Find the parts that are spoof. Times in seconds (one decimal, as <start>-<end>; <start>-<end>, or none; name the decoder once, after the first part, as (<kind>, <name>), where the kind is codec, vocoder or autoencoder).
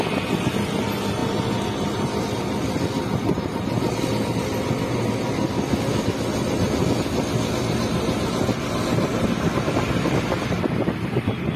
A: none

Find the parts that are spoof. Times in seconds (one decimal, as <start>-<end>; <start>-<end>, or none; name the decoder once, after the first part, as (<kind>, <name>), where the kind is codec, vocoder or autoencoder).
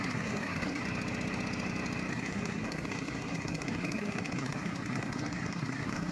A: 0.0-0.8 (codec, SNAC); 2.1-6.1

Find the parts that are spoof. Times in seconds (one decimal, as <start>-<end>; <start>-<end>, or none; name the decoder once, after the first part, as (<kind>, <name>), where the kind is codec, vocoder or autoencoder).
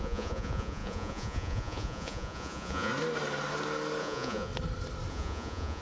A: 0.0-2.9 (vocoder, Vocos); 4.0-4.5; 5.1-5.8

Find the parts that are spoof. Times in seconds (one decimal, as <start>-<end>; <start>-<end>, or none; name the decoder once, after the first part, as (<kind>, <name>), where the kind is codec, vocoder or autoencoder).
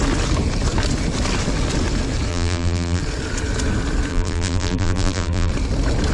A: 2.3-3.0 (vocoder, BigVGAN v2); 4.1-5.5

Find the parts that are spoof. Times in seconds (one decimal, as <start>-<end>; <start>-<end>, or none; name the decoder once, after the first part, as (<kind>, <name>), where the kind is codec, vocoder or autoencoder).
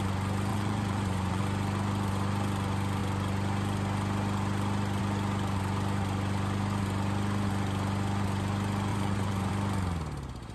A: 0.5-1.4 (vocoder, Vocos); 8.9-9.5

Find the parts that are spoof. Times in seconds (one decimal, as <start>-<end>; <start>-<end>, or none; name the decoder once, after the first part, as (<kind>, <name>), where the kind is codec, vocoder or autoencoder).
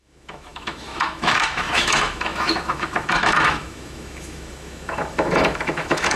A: 0.0-6.2 (autoencoder, DAC-VAE)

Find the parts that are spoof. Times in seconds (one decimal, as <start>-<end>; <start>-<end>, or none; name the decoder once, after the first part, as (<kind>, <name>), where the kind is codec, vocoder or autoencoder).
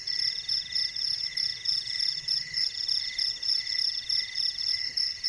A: 1.5-4.7 (vocoder, BigVGAN v2)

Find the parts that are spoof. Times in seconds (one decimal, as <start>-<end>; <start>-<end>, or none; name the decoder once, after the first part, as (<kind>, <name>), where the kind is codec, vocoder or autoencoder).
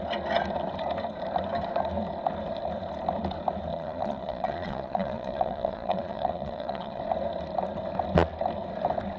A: 3.7-7.0 (vocoder, Vocos)